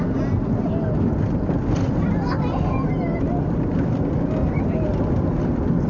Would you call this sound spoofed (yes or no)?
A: no